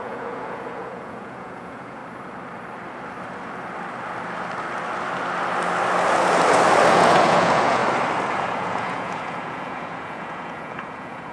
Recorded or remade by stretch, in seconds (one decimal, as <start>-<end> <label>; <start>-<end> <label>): 0.0-2.0 remade; 2.0-6.9 recorded; 6.9-7.8 remade; 7.8-8.4 recorded; 8.4-11.3 remade